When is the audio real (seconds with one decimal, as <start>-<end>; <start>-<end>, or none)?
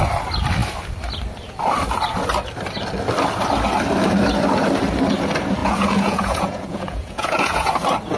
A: 0.0-5.6; 7.7-8.2